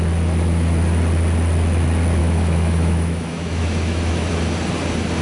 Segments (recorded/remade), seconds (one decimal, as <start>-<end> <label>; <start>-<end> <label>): 0.0-2.2 recorded; 2.2-4.3 remade; 4.3-5.2 recorded